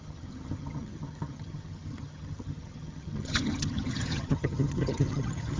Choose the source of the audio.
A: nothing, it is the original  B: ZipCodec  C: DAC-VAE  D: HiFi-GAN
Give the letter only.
D